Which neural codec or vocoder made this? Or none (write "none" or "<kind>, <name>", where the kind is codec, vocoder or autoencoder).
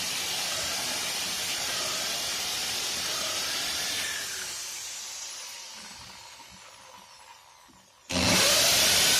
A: none